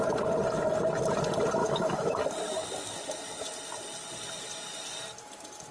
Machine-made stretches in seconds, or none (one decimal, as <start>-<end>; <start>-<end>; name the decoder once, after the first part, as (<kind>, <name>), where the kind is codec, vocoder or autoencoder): 1.6-2.1 (autoencoder, DAC-VAE)